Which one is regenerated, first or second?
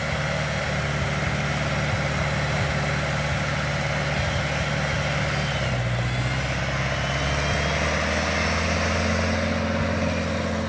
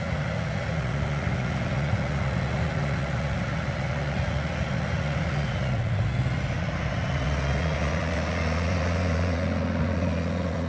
second